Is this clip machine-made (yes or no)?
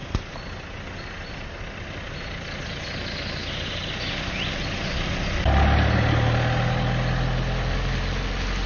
no